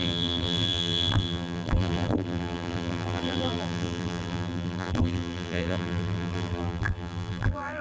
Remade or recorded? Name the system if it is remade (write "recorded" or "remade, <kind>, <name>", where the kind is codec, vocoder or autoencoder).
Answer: remade, vocoder, BigVGAN v2